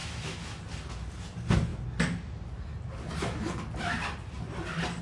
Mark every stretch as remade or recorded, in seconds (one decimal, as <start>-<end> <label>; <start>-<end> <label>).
0.0-0.6 remade; 0.6-5.0 recorded